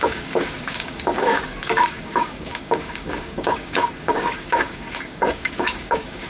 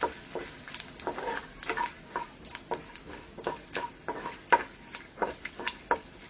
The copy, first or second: first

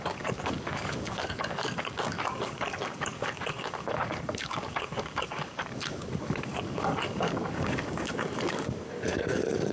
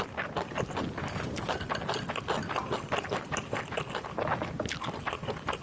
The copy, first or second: first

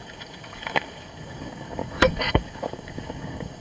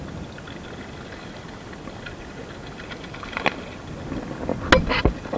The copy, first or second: first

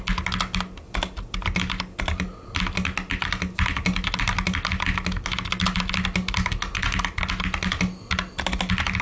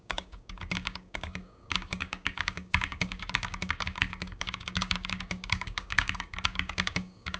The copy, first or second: second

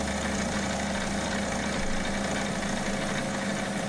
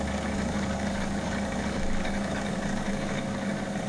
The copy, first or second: second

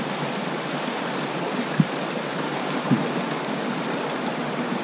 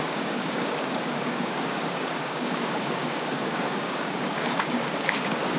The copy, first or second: second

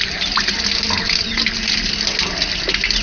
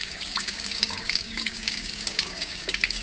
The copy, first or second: second